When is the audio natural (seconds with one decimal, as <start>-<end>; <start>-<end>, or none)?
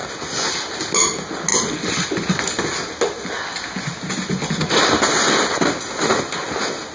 0.0-6.9